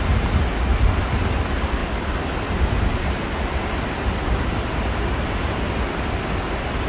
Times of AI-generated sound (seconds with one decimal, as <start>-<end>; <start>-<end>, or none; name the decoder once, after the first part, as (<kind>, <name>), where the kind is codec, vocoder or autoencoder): none

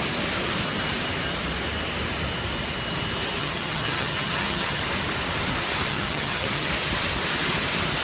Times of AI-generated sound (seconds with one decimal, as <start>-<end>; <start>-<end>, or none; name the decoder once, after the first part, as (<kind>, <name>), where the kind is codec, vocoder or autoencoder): 3.4-4.8 (vocoder, HiFi-GAN); 5.9-6.7

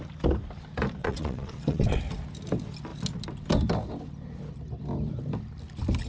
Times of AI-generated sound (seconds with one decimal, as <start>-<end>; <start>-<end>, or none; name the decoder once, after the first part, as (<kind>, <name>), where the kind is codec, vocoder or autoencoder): 1.0-2.0 (vocoder, WaveNeXt)

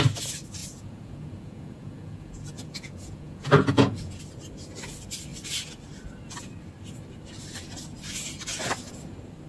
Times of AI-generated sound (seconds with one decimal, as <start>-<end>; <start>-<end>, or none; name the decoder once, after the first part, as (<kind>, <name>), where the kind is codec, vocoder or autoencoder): 0.6-4.2 (vocoder, Vocos)

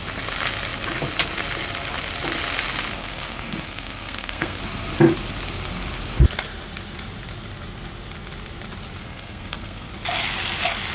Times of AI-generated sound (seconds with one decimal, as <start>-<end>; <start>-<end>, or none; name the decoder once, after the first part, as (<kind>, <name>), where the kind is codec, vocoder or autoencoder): 3.0-4.6 (codec, SNAC); 9.0-9.9